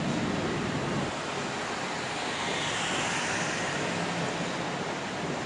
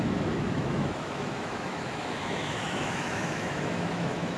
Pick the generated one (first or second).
second